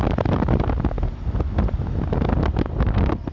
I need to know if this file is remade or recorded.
recorded